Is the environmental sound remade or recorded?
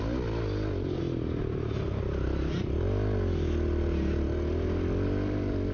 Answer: recorded